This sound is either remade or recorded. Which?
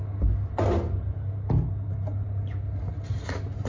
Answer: recorded